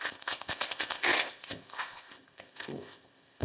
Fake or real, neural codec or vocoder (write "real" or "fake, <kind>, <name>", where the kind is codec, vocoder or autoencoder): fake, codec, ZipCodec